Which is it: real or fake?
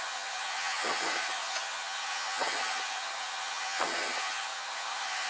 fake